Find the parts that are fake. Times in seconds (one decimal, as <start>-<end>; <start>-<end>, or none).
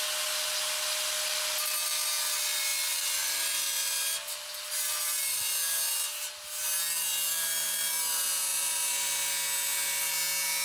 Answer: none